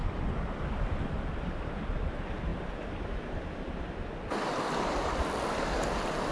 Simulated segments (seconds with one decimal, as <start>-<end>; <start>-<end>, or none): 0.0-1.6